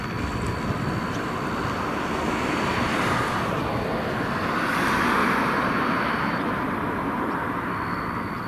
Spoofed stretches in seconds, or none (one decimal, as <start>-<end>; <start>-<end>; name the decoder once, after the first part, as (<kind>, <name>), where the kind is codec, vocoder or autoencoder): 2.9-3.5 (vocoder, BigVGAN v2); 5.2-7.3